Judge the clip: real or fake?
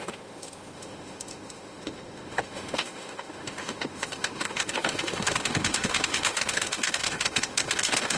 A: fake